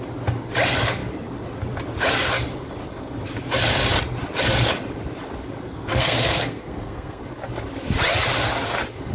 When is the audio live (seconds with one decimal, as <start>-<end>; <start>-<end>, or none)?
0.0-5.7; 7.2-9.1